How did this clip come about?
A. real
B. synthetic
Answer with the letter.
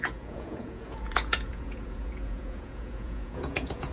B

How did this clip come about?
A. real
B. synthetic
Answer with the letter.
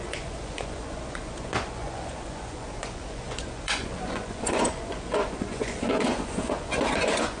B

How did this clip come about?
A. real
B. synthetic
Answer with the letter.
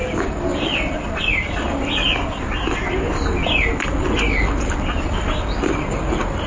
A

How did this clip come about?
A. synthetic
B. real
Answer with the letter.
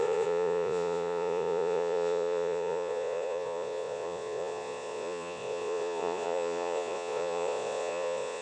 A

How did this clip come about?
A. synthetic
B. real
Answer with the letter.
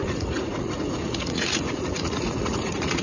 A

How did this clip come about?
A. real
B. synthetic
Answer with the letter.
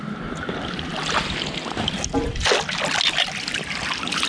A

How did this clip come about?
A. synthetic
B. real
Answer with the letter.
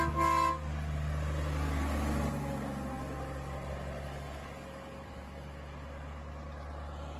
B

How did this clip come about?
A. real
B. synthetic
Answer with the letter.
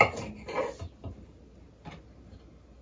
A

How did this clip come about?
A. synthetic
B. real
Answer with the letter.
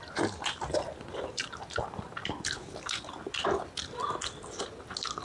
B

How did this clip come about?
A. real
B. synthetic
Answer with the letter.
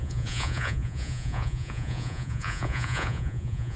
B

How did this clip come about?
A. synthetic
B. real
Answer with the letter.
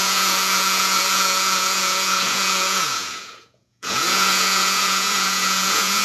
A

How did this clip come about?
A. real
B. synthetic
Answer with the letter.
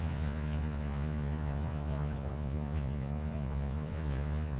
B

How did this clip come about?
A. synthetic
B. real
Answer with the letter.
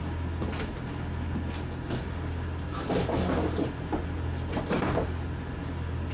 B